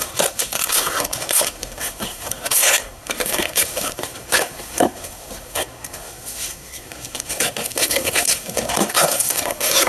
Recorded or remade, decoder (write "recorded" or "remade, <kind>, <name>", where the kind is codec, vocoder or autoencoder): remade, codec, SNAC